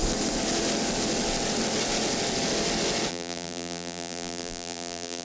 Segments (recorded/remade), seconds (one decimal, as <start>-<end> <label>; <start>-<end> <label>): 0.0-3.1 recorded; 3.1-5.2 remade